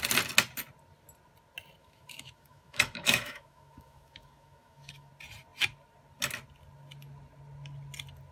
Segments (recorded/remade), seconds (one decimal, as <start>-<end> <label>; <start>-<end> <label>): 0.0-1.8 recorded; 1.8-5.1 remade; 5.1-8.3 recorded